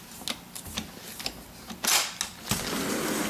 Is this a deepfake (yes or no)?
no